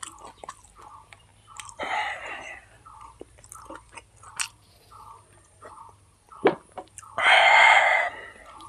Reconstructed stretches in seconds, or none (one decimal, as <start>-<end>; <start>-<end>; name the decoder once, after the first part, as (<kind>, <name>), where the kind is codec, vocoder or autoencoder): 1.3-3.7 (vocoder, BigVGAN v2)